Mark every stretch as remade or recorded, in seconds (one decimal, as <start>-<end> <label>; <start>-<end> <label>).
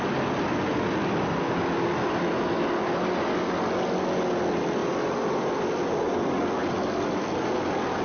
0.0-8.0 recorded